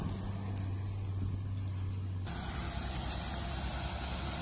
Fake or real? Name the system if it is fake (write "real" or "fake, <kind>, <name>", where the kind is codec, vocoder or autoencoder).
real